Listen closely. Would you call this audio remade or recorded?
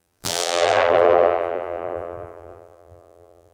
remade